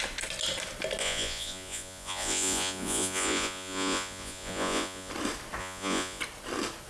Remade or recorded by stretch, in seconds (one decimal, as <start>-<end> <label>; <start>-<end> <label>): 0.0-1.0 recorded; 1.0-5.1 remade; 5.1-5.6 recorded; 5.6-6.2 remade; 6.2-6.9 recorded